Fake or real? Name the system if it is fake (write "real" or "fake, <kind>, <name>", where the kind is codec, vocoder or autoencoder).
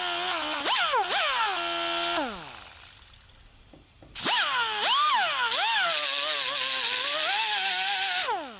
real